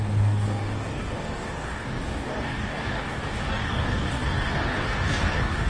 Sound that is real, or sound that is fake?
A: fake